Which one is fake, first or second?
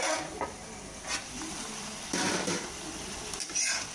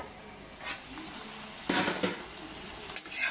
first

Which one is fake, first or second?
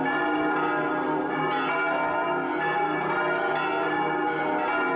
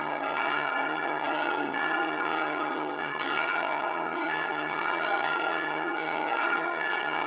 second